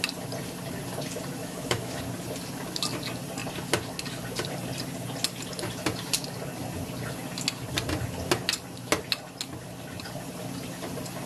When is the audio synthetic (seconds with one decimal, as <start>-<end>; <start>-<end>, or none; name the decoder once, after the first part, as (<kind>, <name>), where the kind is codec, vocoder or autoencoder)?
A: 1.4-2.0 (autoencoder, DAC-VAE)